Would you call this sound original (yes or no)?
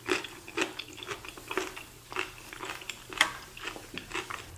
yes